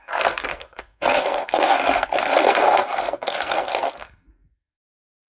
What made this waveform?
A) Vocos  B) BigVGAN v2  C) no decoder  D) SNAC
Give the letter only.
D